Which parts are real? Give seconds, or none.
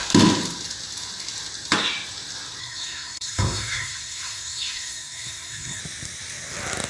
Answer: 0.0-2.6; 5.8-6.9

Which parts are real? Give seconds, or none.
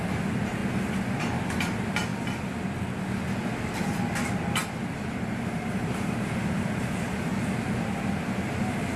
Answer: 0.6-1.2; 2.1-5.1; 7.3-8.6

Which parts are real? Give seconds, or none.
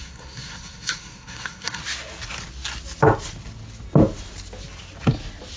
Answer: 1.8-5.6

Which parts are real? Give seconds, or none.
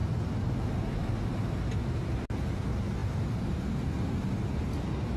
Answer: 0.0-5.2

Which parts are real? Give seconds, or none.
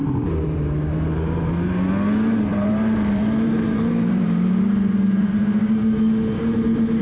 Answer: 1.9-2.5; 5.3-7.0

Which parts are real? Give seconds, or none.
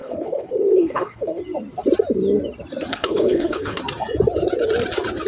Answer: 1.4-2.9; 3.8-5.3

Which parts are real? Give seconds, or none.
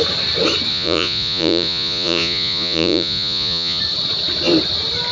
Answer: 0.0-0.7; 3.8-5.1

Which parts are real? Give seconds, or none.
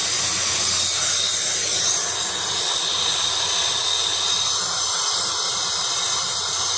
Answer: 0.0-6.8